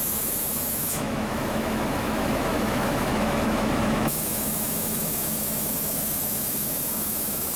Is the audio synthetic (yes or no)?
yes